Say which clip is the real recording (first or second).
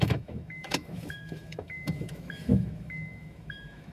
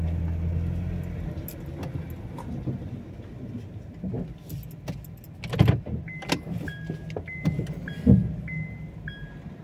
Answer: second